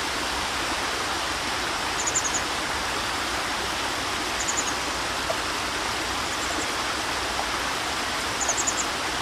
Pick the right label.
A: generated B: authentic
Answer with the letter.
B